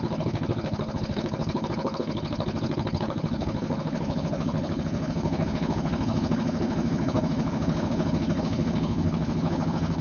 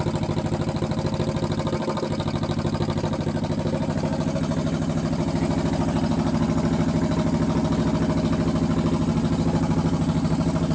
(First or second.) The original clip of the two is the second